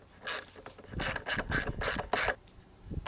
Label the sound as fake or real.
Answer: real